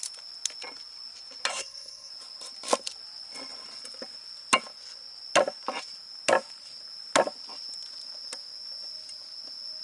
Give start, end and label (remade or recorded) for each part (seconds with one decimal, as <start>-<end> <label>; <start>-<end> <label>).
0.0-1.5 recorded; 1.5-2.1 remade; 2.1-9.8 recorded